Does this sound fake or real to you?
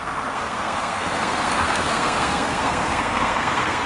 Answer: fake